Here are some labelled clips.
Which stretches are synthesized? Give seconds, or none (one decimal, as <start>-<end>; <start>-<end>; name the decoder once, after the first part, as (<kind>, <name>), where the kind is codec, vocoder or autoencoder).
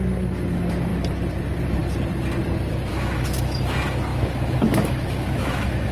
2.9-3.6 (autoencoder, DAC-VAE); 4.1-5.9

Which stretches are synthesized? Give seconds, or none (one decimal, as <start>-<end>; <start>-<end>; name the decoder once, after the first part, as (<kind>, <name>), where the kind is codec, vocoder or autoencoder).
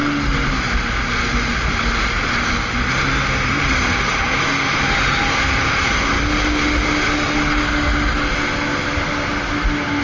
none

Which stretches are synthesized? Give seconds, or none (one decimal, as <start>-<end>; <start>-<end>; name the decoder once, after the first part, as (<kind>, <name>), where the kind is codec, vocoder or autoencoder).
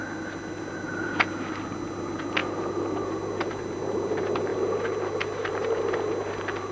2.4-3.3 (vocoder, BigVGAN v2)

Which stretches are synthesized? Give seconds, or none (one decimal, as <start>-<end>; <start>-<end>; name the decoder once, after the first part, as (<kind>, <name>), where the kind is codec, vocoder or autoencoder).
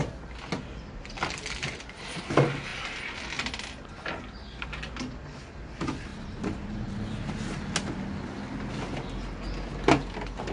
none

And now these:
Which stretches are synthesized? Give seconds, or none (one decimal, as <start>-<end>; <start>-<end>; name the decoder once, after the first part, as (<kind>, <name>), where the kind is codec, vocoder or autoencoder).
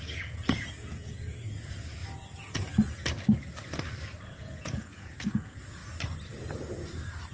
0.0-2.0 (vocoder, Vocos); 4.2-5.8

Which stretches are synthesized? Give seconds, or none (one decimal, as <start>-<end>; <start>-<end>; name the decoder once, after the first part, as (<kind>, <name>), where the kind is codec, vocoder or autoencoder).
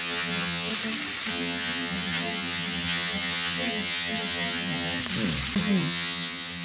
0.0-0.7 (vocoder, HiFi-GAN); 1.3-5.0; 5.6-6.6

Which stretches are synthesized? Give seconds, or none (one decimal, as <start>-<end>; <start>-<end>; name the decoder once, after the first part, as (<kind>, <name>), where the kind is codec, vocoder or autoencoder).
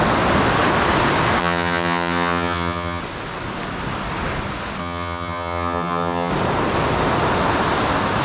1.4-3.0 (vocoder, HiFi-GAN); 4.8-6.3